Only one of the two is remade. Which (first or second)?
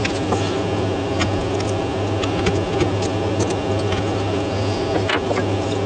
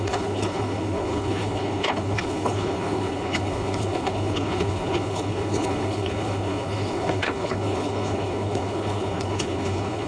second